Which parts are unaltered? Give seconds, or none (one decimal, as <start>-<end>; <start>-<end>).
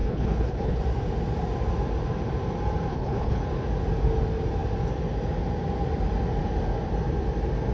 0.8-2.9; 3.4-7.7